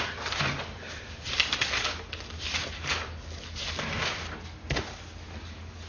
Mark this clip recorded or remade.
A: recorded